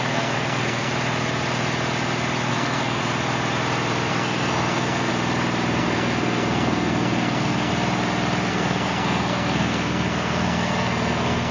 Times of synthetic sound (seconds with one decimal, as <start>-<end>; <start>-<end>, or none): 0.0-0.9; 2.5-3.0; 4.1-5.1; 5.8-7.7; 8.5-11.5